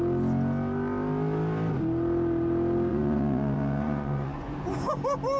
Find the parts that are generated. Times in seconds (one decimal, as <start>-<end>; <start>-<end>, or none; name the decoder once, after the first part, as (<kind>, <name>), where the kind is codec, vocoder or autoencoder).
2.9-4.9 (vocoder, Vocos)